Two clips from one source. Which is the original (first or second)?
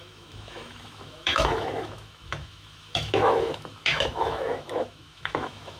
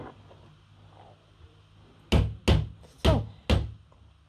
second